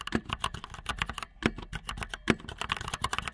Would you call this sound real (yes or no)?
yes